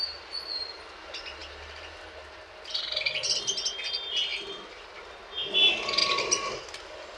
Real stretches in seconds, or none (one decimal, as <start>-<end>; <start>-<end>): 0.0-1.4; 2.9-4.3; 5.0-7.2